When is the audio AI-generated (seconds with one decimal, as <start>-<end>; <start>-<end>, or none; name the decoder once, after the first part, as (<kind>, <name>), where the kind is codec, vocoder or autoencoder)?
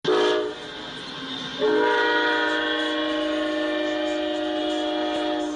none